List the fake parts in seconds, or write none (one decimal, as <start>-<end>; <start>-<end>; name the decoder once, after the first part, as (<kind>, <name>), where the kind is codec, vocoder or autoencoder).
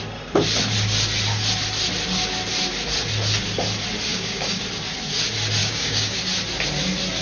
4.1-4.6 (codec, DAC); 5.6-6.2